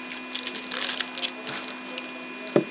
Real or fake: real